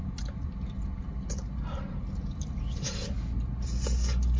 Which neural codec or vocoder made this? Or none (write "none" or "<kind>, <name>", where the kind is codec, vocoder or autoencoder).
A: none